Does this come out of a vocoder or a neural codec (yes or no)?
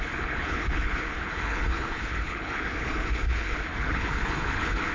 yes